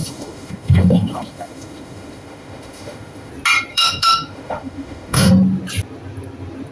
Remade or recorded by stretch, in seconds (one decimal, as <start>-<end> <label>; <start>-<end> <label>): 0.0-3.3 remade; 3.3-3.7 recorded; 3.7-5.3 remade; 5.3-6.7 recorded